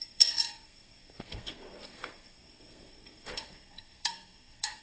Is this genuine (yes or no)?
no